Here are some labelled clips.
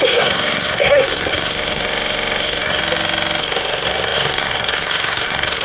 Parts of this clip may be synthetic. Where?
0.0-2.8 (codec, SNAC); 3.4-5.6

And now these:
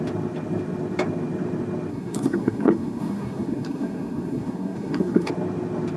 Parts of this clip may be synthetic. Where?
1.9-5.3 (codec, SNAC)